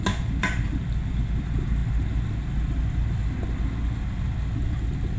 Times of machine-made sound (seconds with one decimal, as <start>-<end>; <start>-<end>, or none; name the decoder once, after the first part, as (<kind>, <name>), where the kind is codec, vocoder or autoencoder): none